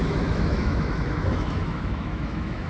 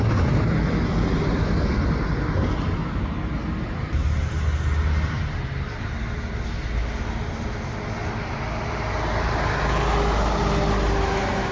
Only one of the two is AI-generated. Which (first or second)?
first